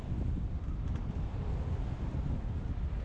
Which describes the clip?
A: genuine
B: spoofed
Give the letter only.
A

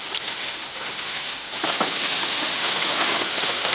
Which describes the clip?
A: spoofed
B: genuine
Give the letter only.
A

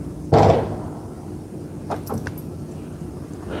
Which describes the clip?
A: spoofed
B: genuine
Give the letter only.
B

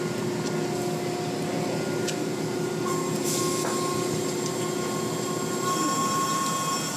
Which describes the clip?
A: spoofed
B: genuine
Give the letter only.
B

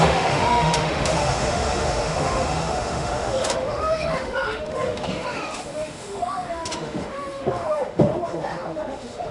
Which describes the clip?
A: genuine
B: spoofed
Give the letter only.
B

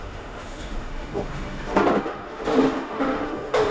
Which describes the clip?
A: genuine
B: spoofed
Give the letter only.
B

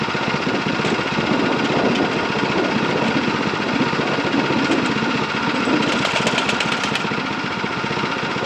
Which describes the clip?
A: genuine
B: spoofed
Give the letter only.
A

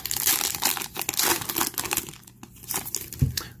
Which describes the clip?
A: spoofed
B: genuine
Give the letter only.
B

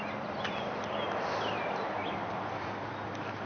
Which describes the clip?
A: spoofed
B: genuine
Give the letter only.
B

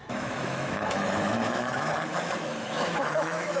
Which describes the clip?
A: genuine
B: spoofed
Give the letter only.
B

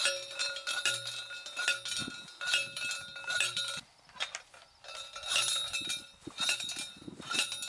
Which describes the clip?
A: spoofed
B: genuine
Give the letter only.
B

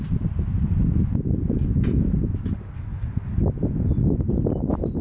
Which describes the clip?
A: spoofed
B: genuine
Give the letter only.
B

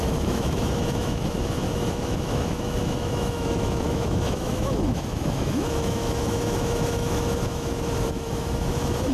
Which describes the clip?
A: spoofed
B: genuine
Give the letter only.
A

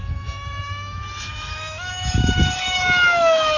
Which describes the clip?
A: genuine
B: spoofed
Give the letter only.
B